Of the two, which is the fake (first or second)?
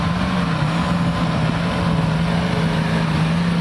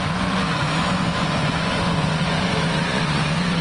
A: second